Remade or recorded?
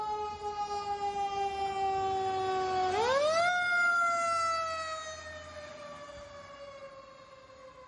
recorded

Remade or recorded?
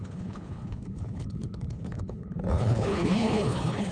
remade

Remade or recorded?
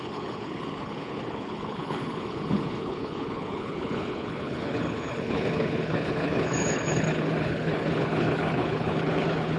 remade